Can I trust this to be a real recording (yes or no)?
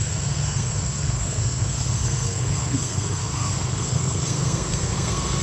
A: no